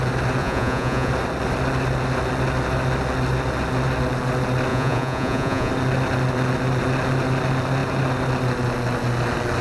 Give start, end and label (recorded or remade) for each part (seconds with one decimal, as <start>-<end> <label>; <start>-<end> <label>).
0.0-0.4 recorded; 0.4-1.1 remade; 1.1-4.7 recorded; 4.7-5.7 remade; 5.7-9.6 recorded